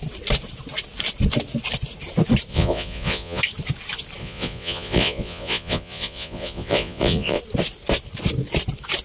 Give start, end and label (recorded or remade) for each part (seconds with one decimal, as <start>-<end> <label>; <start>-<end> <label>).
0.0-2.5 recorded; 2.5-3.4 remade; 3.4-4.2 recorded; 4.2-7.4 remade; 7.4-9.0 recorded